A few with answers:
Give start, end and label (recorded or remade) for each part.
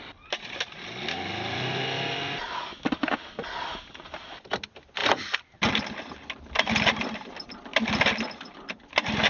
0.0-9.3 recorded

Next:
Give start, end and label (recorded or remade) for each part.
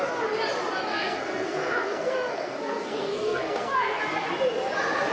0.0-0.9 recorded; 0.9-4.0 remade; 4.0-5.1 recorded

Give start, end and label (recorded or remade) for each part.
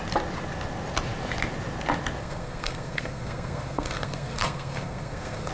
0.0-2.2 recorded; 2.2-5.5 remade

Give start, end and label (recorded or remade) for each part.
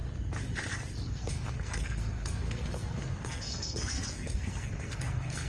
0.0-1.1 recorded; 1.1-5.5 remade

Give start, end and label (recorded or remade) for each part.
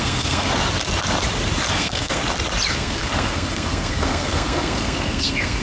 0.0-0.5 remade; 0.5-1.7 recorded; 1.7-2.2 remade; 2.2-2.7 recorded; 2.7-5.6 remade